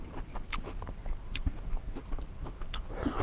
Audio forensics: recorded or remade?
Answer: recorded